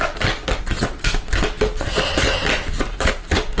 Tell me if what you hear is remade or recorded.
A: recorded